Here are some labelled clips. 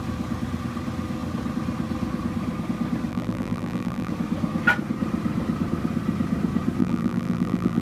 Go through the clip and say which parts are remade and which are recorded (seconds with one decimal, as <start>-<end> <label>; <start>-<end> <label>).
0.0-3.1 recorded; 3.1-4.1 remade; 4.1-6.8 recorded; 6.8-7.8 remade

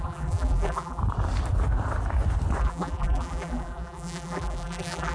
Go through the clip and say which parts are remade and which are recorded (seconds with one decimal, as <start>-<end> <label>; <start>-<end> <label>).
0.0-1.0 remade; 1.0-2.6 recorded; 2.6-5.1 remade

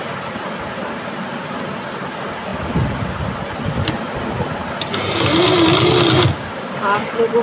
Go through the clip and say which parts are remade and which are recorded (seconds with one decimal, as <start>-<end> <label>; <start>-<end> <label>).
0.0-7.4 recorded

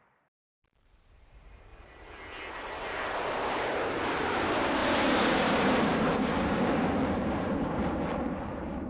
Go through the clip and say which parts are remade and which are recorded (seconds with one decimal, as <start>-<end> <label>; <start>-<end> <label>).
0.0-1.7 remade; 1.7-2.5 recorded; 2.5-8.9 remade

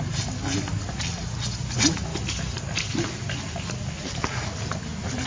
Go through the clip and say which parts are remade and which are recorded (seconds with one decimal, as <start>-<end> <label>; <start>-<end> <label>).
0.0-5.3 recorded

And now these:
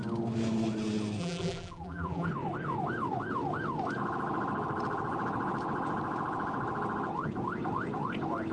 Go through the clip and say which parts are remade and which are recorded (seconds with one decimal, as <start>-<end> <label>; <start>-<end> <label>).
0.0-1.2 recorded; 1.2-2.3 remade; 2.3-8.5 recorded

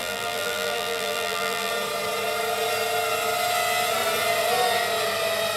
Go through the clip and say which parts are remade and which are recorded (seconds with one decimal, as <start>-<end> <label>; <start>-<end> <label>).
0.0-1.7 remade; 1.7-5.6 recorded